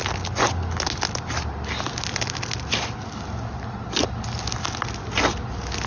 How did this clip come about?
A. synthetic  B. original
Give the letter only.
B